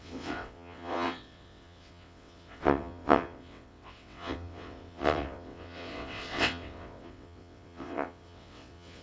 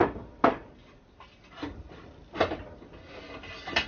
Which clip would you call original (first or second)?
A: second